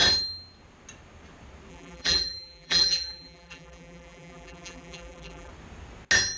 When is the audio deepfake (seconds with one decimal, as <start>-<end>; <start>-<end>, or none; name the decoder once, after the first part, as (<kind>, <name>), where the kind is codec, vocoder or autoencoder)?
1.7-5.5 (vocoder, BigVGAN v2)